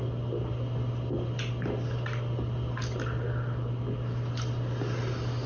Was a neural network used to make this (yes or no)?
no